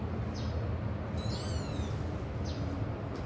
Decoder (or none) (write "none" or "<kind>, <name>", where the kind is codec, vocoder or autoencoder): none